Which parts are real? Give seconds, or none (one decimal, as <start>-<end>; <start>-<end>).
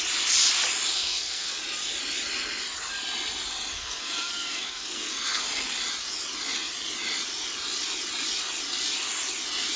0.0-0.9; 1.6-3.7; 5.4-9.8